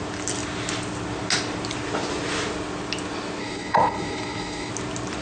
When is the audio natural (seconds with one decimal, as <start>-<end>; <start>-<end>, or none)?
0.0-3.4; 4.7-5.2